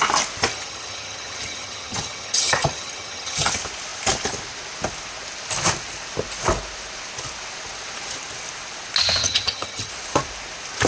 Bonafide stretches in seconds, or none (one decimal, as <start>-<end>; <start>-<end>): 0.0-0.5; 3.5-9.2; 9.9-10.9